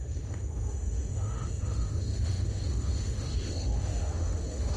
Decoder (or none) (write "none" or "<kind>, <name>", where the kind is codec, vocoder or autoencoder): autoencoder, DAC-VAE